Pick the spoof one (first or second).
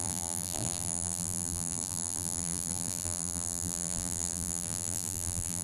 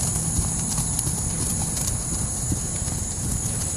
first